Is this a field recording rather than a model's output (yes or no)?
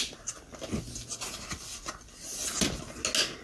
yes